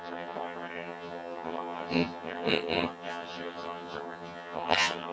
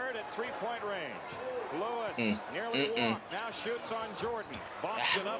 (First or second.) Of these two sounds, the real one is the second